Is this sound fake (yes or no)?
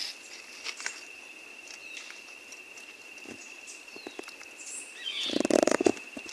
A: no